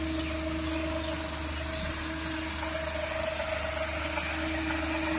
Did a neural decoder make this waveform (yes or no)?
no